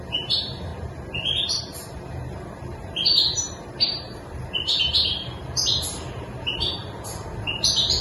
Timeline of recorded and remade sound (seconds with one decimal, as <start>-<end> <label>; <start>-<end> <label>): 0.0-0.7 remade; 0.7-1.6 recorded; 1.6-8.0 remade